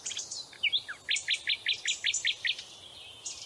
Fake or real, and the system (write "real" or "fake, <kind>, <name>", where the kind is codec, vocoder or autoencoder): real